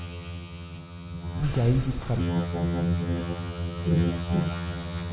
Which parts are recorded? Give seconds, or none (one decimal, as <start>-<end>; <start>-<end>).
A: 1.4-2.2